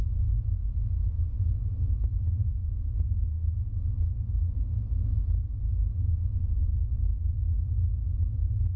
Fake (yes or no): no